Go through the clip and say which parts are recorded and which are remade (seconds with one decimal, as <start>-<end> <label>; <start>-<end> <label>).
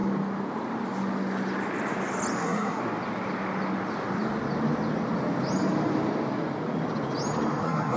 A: 0.0-2.4 recorded; 2.4-2.8 remade; 2.8-7.6 recorded; 7.6-8.0 remade